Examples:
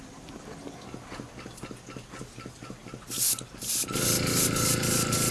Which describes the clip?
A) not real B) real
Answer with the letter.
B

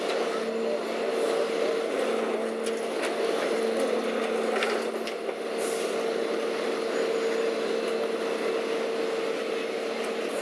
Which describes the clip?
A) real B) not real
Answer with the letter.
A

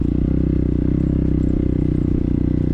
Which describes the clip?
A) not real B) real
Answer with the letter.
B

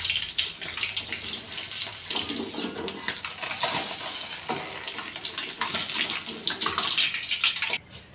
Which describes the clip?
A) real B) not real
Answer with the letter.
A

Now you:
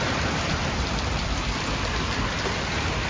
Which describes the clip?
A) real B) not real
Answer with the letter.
B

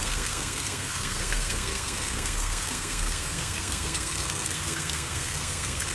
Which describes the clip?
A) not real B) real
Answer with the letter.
A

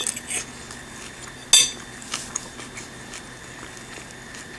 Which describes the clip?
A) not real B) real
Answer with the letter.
B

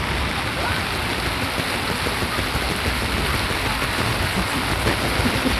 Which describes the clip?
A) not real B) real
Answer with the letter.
B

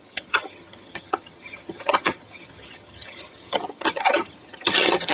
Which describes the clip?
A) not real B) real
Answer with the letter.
A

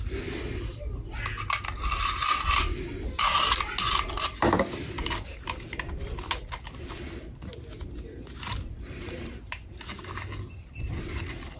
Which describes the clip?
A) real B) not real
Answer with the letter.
A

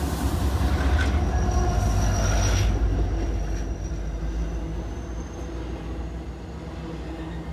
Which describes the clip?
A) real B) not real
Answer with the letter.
A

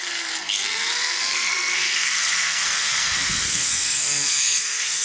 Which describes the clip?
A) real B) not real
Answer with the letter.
B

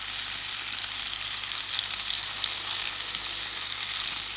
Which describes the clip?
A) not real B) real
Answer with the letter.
B